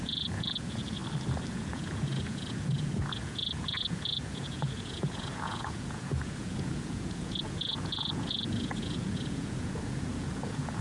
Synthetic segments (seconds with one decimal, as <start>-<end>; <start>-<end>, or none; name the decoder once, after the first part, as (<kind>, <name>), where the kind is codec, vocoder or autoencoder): 0.0-1.0 (vocoder, Vocos); 1.5-10.8